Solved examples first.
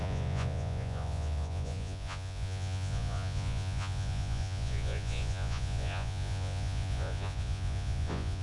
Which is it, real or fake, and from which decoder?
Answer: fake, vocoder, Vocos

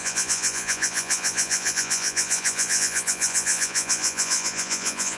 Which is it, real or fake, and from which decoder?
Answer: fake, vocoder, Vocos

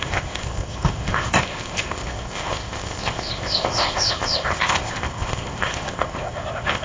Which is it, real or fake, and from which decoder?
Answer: fake, codec, ZipCodec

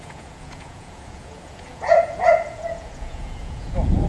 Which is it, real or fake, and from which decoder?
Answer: fake, vocoder, Vocos